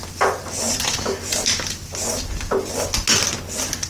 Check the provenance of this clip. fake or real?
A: real